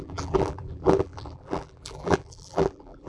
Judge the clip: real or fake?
fake